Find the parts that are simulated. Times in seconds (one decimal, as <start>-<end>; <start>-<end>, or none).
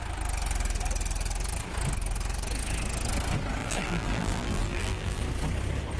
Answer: 3.6-5.2